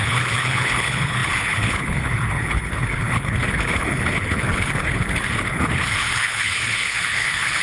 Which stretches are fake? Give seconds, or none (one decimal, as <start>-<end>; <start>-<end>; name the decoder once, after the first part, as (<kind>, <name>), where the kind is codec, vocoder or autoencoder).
0.0-7.6 (codec, HILCodec)